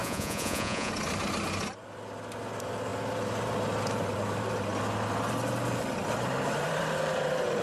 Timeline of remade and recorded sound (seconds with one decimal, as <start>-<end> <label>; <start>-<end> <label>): 0.0-0.9 remade; 0.9-7.6 recorded